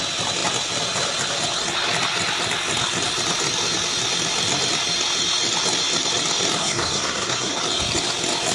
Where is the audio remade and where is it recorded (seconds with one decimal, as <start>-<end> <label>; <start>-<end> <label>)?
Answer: 0.0-6.6 recorded; 6.6-7.6 remade; 7.6-8.5 recorded